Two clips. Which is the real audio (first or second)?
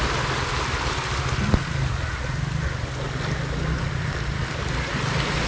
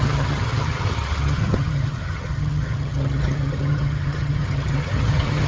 first